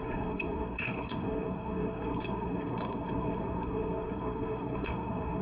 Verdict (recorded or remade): remade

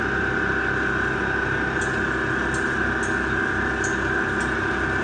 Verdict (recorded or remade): recorded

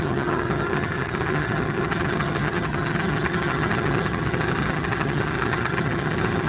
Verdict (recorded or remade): remade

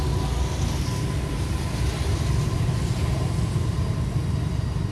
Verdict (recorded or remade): recorded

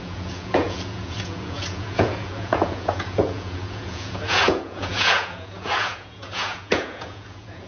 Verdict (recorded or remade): remade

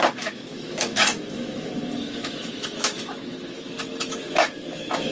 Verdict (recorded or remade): remade